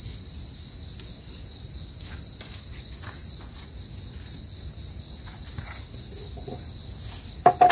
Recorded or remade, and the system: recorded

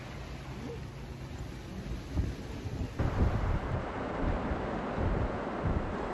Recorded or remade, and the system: recorded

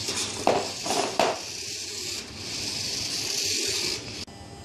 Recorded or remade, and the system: recorded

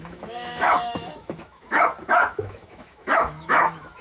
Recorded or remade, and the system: remade, autoencoder, DAC-VAE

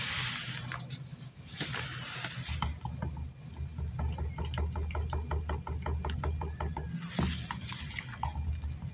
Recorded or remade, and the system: recorded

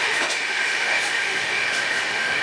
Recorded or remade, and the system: remade, autoencoder, DAC-VAE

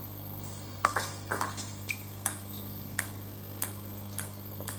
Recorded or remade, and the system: remade, codec, SNAC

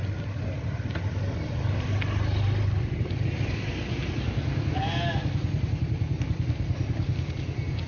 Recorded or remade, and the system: recorded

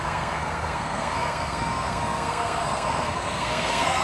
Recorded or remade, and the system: remade, codec, SNAC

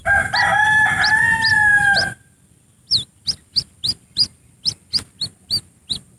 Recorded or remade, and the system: recorded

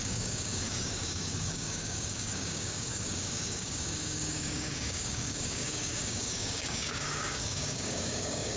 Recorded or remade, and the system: remade, codec, DAC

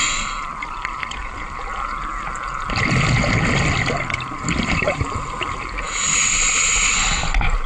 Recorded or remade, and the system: recorded